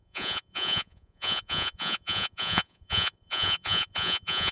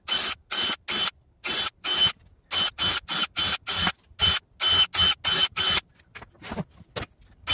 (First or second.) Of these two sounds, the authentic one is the second